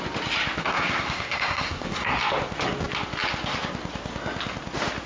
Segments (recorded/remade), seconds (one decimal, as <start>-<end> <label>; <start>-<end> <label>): 0.0-0.6 recorded; 0.6-2.2 remade; 2.2-5.1 recorded